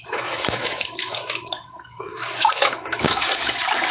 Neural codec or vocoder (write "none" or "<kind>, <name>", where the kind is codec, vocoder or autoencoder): autoencoder, DAC-VAE